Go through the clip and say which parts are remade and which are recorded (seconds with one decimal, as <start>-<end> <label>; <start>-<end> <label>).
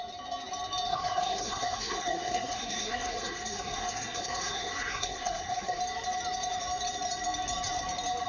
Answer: 0.0-0.9 recorded; 0.9-5.8 remade; 5.8-8.3 recorded